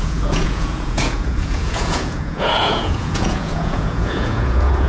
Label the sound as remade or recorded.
remade